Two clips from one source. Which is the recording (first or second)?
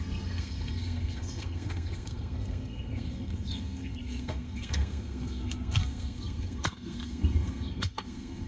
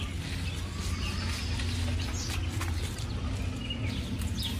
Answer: second